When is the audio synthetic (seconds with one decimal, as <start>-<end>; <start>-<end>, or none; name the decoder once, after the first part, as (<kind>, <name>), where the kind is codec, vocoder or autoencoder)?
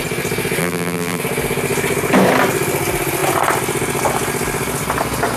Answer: 0.6-1.2 (vocoder, BigVGAN v2)